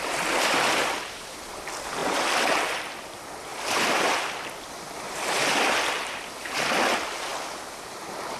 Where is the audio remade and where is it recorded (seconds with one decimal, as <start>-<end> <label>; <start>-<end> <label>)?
0.0-8.4 recorded